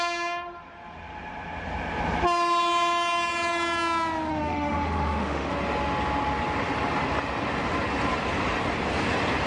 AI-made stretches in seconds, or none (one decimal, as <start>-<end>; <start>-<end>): 4.3-5.5